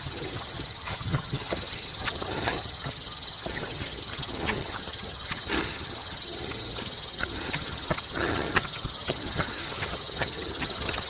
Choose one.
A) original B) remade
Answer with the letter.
B